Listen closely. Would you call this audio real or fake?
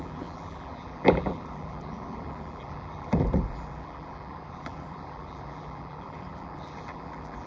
fake